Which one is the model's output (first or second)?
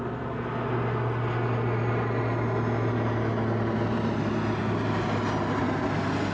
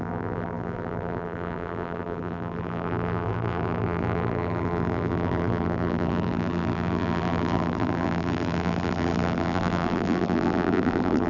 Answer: second